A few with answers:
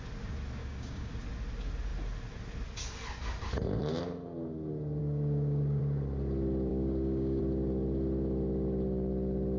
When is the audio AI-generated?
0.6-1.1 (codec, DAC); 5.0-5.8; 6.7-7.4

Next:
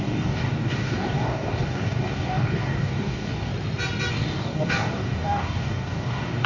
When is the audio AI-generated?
0.0-3.5 (codec, DAC); 4.1-6.5

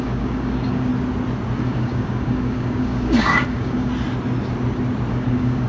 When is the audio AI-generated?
0.0-0.9 (codec, DAC); 1.6-3.9; 5.1-5.7

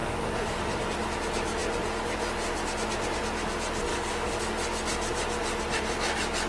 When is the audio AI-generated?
0.0-0.6 (codec, DAC); 3.9-4.4